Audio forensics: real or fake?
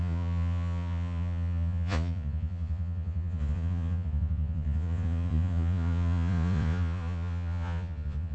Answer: fake